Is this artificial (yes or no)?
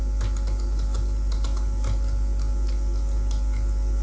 no